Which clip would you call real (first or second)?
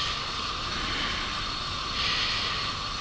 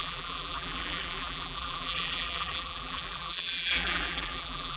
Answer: first